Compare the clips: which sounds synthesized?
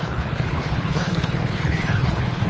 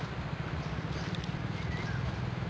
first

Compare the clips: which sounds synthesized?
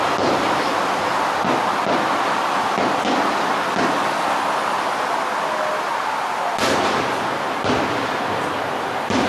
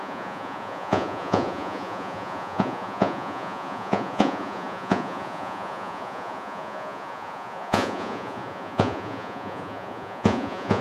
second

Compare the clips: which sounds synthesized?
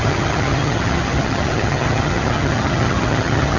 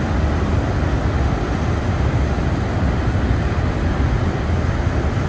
first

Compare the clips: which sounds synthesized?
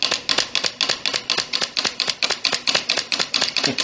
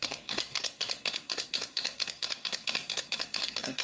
second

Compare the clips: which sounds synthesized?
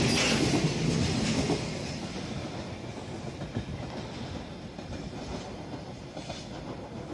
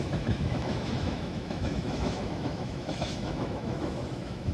second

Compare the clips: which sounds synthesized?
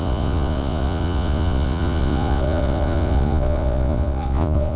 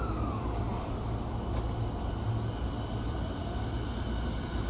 first